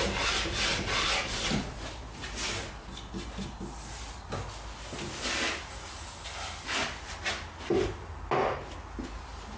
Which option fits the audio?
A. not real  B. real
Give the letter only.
B